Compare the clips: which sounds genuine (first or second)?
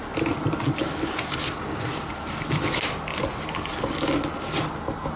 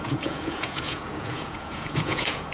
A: first